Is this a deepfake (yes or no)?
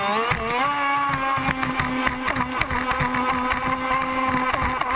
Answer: no